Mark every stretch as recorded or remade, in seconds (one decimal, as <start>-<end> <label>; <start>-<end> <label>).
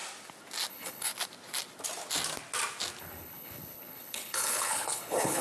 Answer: 0.0-0.7 recorded; 0.7-1.1 remade; 1.1-3.0 recorded; 3.0-5.4 remade